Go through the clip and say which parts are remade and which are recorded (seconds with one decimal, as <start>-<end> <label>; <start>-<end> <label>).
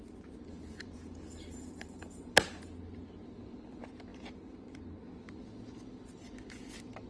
0.0-0.5 recorded; 0.5-2.3 remade; 2.3-4.1 recorded; 4.1-4.8 remade; 4.8-7.1 recorded